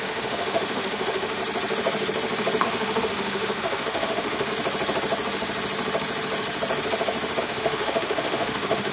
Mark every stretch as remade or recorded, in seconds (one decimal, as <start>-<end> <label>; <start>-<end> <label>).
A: 0.0-1.4 remade; 1.4-2.6 recorded; 2.6-4.5 remade; 4.5-7.4 recorded; 7.4-8.9 remade

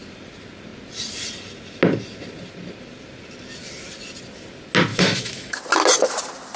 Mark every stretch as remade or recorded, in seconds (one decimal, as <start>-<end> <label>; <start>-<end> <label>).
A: 0.0-4.9 recorded; 4.9-5.6 remade; 5.6-6.6 recorded